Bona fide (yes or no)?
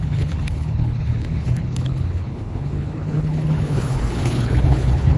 no